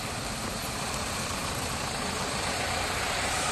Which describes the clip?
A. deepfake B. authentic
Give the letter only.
A